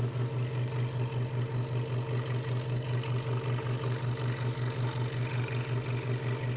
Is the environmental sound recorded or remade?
recorded